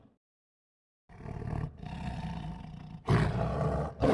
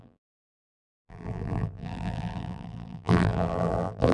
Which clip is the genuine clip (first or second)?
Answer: first